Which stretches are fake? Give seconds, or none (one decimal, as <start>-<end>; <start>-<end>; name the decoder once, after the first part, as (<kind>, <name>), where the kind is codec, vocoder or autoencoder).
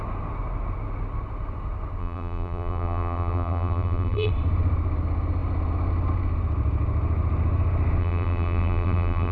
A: 2.0-4.3 (vocoder, BigVGAN v2); 8.0-9.3